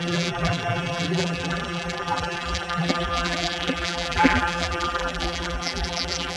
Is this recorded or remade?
remade